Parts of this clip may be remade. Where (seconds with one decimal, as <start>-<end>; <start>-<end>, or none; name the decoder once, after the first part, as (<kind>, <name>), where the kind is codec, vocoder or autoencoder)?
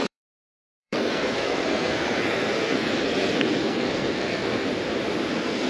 0.0-4.7 (codec, SNAC); 5.3-5.7